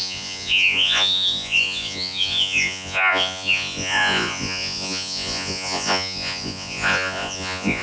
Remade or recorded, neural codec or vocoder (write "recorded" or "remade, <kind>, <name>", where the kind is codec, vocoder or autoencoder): remade, vocoder, Vocos